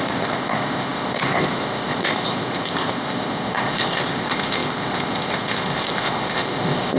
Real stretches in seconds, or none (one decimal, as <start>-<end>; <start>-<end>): none